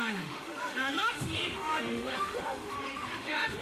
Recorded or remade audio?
remade